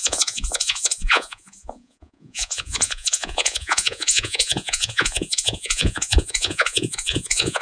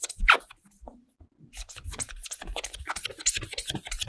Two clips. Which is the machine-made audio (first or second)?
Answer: first